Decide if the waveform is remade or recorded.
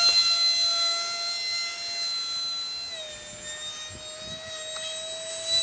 recorded